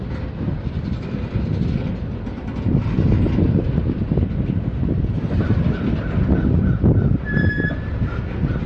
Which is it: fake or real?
real